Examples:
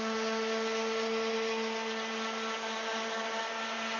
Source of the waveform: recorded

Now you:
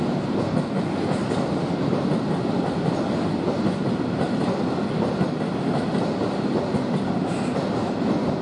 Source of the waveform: recorded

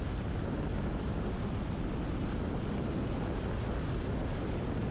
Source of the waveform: recorded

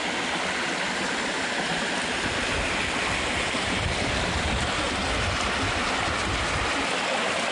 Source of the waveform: recorded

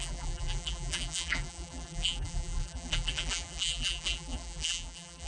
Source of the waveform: remade